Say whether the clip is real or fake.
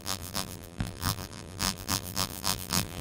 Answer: fake